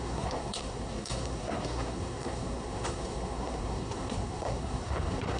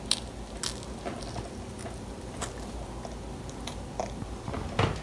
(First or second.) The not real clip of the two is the first